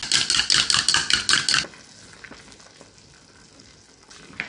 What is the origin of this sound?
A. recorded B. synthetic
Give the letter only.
A